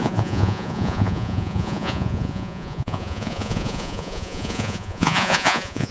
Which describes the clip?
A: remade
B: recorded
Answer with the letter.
A